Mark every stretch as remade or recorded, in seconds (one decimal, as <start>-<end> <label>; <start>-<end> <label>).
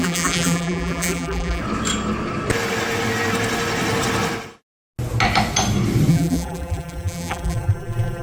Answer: 0.0-1.6 remade; 1.6-6.1 recorded; 6.1-8.2 remade